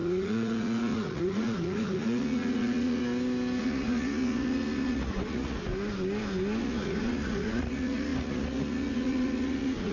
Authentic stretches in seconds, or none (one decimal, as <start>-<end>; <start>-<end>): 3.0-3.6; 5.7-6.6